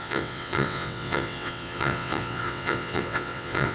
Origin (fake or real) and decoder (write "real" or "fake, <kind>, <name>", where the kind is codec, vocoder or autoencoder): fake, vocoder, WaveNeXt